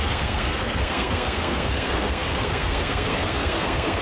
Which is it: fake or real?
fake